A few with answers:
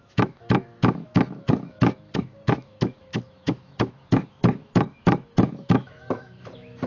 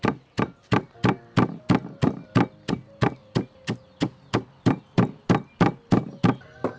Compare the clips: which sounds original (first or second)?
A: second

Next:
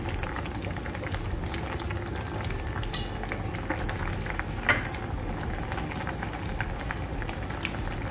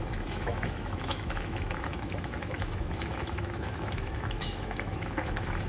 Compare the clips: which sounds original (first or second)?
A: first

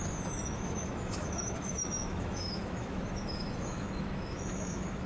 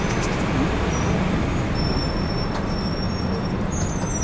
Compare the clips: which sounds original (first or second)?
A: second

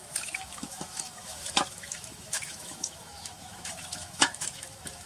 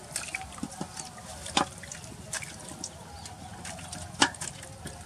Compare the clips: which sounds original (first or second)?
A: second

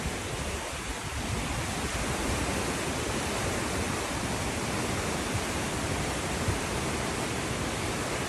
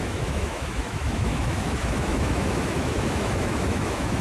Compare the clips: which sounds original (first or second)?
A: first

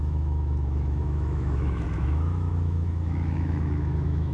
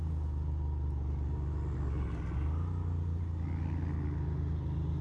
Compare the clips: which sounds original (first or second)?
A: second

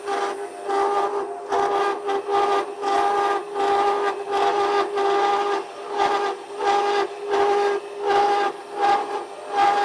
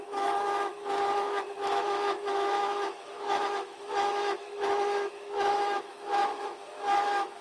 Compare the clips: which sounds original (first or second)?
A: first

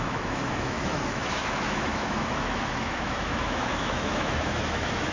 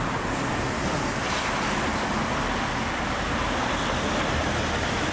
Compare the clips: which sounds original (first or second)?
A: second